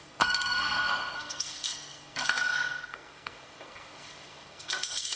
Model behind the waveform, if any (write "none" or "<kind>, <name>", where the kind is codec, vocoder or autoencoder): codec, SNAC